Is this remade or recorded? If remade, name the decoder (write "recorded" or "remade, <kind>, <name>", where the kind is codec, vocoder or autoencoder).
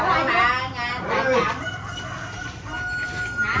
recorded